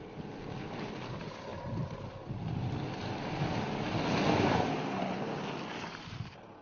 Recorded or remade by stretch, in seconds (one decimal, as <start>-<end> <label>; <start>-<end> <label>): 0.0-6.6 recorded